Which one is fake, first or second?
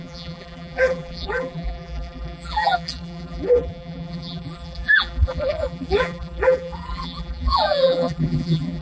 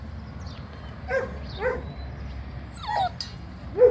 first